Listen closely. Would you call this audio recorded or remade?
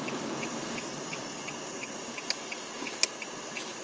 recorded